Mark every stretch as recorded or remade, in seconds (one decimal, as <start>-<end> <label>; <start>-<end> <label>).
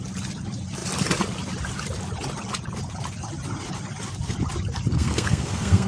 0.0-4.9 recorded; 4.9-5.9 remade